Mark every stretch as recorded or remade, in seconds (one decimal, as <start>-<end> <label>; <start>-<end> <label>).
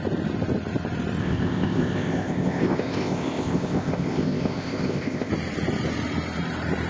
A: 0.0-1.2 recorded; 1.2-5.3 remade; 5.3-6.9 recorded